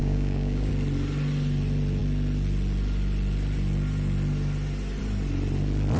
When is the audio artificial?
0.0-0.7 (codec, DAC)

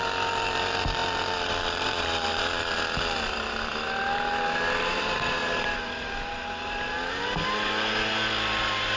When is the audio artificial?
0.0-3.7 (vocoder, BigVGAN v2); 4.8-5.4; 8.6-9.0

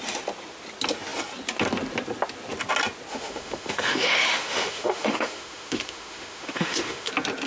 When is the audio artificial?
3.1-7.1 (autoencoder, DAC-VAE)

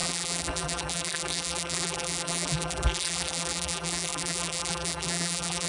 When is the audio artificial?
0.0-5.7 (vocoder, BigVGAN v2)

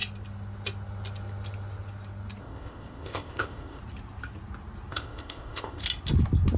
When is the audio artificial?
2.4-3.8 (codec, ZipCodec); 4.9-5.8

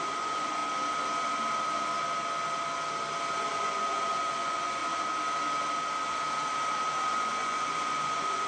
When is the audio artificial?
0.0-0.6 (vocoder, Vocos); 3.5-4.8; 7.0-8.5

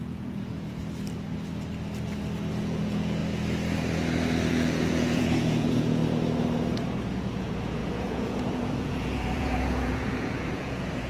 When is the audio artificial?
0.0-0.8 (vocoder, Vocos); 2.5-3.2; 4.5-6.0; 7.1-11.1